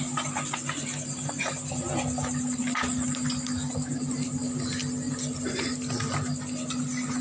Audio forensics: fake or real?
real